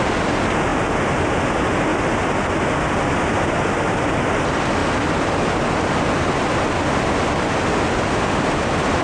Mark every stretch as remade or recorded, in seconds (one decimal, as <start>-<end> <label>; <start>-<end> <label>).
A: 0.0-9.0 recorded